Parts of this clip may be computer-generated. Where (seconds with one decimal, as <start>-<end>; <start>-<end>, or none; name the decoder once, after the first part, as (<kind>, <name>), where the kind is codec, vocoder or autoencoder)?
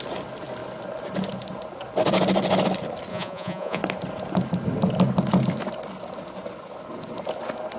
3.1-3.8 (vocoder, Vocos)